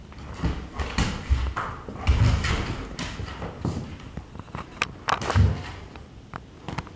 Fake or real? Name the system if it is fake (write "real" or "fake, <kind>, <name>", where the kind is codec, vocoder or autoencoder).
real